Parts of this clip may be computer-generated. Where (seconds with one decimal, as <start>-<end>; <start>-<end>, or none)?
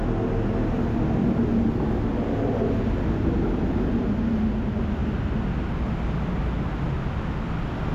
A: none